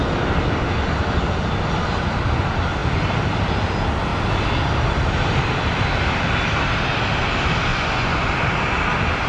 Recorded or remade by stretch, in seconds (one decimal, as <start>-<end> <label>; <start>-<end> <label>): 0.0-7.7 recorded; 7.7-8.3 remade; 8.3-9.3 recorded